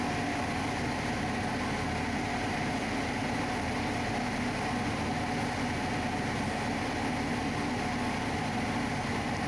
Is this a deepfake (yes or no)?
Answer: no